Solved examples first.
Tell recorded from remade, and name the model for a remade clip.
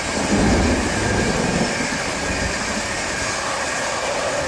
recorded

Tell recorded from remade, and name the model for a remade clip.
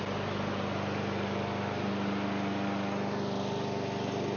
recorded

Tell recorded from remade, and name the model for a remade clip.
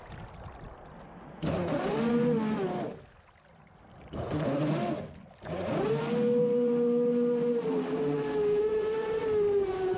recorded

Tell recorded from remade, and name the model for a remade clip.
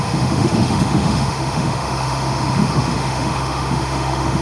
remade, autoencoder, DAC-VAE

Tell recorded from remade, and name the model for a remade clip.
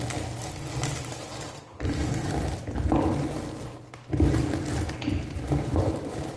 recorded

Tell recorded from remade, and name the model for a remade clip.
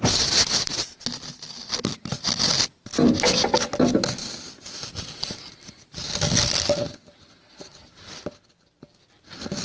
recorded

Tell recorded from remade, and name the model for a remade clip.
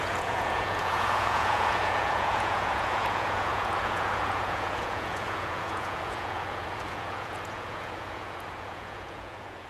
remade, vocoder, Vocos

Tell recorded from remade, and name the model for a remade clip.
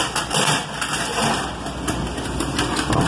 recorded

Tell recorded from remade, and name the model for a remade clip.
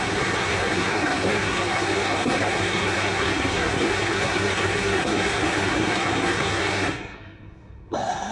remade, codec, SNAC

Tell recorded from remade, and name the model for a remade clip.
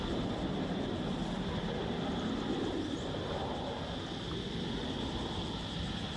recorded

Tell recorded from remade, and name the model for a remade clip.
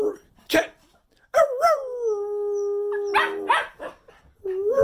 recorded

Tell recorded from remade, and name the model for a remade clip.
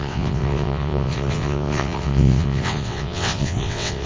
remade, vocoder, WaveNeXt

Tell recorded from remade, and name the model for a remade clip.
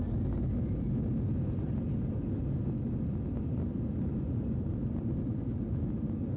recorded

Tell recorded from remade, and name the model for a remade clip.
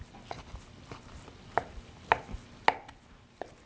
recorded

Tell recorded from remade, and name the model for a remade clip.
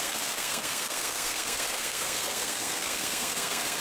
remade, codec, SNAC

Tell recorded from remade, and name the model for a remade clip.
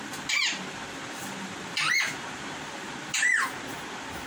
recorded